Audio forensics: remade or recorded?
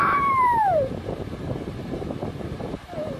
remade